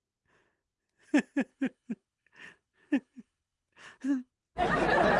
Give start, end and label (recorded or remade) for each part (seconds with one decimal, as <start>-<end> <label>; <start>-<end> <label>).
0.0-1.5 recorded; 1.5-4.3 remade; 4.3-5.2 recorded